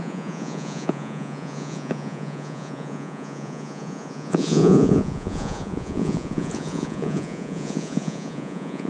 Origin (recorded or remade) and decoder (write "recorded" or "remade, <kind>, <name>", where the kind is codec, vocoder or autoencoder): remade, vocoder, Vocos